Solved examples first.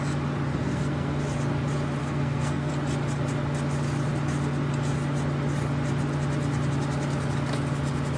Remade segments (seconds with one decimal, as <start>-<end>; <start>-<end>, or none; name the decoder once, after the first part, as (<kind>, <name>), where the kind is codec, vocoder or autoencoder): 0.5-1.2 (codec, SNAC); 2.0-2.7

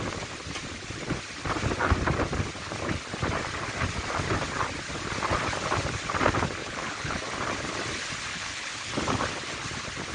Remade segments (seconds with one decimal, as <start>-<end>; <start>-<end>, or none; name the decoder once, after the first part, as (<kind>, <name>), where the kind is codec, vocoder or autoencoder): 6.6-7.2 (codec, HILCodec); 8.3-8.9

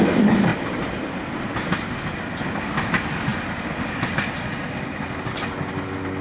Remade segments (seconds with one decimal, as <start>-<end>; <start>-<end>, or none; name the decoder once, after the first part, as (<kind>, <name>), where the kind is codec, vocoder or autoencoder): none